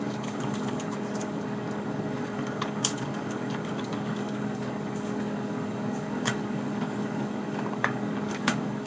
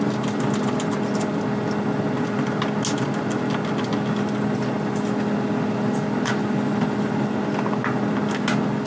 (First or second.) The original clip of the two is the second